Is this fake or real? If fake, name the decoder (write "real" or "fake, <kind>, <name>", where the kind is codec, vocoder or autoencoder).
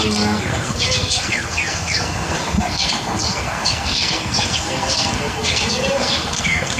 fake, codec, SNAC